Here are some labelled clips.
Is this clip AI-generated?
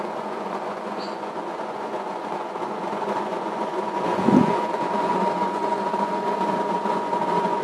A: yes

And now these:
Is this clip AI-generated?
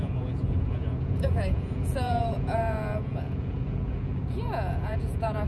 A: yes